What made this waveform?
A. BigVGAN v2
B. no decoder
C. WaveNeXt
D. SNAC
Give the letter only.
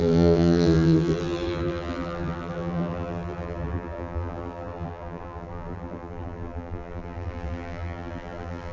A